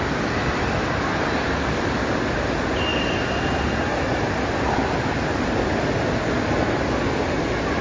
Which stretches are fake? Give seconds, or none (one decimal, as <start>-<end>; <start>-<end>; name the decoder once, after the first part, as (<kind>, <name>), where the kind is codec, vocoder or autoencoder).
none